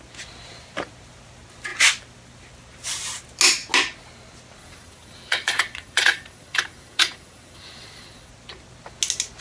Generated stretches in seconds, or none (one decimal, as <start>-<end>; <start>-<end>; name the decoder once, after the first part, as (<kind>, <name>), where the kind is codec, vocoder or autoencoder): 4.6-8.3 (vocoder, Vocos)